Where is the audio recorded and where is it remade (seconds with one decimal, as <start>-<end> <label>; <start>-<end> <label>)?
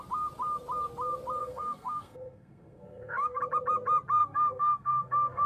0.0-1.4 recorded; 1.4-3.4 remade; 3.4-4.2 recorded; 4.2-5.5 remade